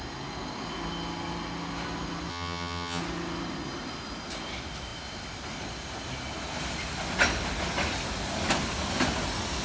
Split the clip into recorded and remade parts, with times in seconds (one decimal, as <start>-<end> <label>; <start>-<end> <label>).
0.0-2.3 recorded; 2.3-3.0 remade; 3.0-9.6 recorded